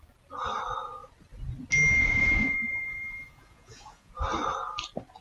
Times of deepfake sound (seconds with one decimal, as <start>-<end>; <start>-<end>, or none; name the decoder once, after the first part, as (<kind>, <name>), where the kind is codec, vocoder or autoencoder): 2.0-4.1 (vocoder, Vocos)

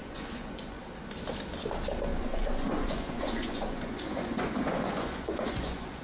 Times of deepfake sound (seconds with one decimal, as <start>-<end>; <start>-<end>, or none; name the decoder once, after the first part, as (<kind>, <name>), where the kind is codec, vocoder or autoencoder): 0.0-0.8 (vocoder, Vocos); 2.1-6.0

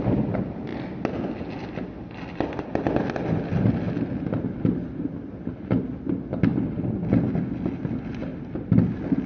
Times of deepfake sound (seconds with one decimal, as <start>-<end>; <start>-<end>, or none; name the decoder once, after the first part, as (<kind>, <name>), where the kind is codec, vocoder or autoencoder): none

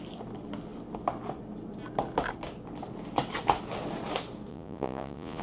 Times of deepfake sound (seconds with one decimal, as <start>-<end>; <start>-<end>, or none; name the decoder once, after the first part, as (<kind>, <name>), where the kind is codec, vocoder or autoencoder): 4.5-5.4 (vocoder, Vocos)